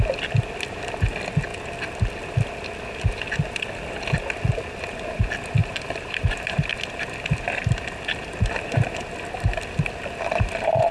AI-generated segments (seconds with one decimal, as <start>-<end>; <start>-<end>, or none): 5.6-6.7